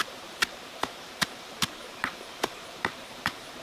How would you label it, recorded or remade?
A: remade